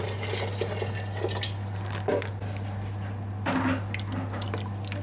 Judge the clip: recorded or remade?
recorded